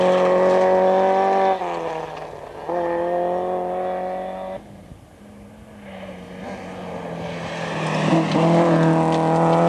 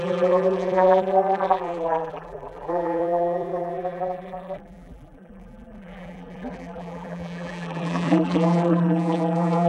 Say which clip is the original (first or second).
first